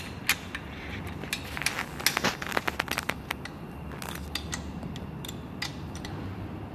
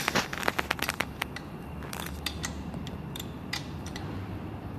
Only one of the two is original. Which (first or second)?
first